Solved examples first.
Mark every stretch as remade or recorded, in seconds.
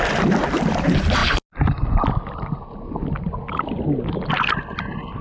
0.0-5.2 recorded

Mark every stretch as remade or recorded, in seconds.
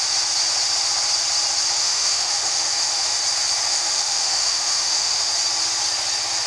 0.0-1.8 recorded; 1.8-3.2 remade; 3.2-3.7 recorded; 3.7-5.3 remade; 5.3-6.5 recorded